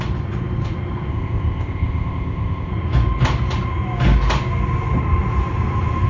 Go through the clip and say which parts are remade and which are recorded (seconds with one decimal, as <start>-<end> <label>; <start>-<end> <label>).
0.0-1.1 recorded; 1.1-2.7 remade; 2.7-6.1 recorded